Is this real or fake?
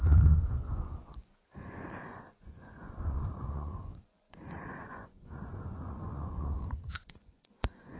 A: fake